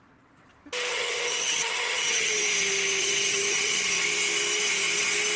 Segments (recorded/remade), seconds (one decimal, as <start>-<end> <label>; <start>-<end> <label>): 0.0-0.9 recorded; 0.9-2.3 remade; 2.3-3.0 recorded; 3.0-3.9 remade; 3.9-5.4 recorded